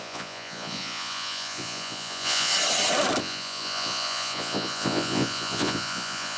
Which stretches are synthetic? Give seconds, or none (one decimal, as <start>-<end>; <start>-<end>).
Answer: 0.0-2.5; 3.2-6.4

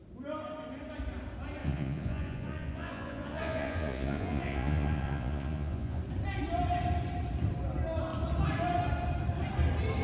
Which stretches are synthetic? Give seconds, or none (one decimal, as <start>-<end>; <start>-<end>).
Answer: 1.6-6.0

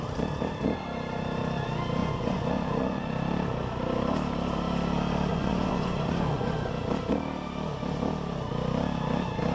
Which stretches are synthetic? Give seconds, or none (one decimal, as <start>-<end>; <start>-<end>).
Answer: 2.0-3.1; 5.3-6.7

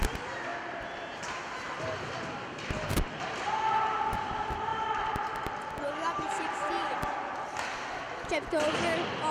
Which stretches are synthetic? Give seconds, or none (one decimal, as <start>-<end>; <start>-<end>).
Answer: none